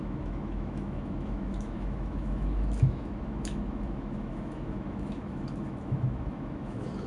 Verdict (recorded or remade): remade